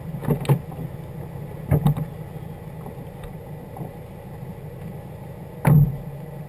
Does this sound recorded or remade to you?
recorded